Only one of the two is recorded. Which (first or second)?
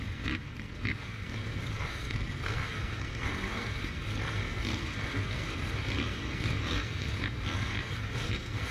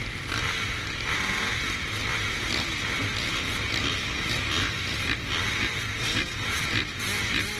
second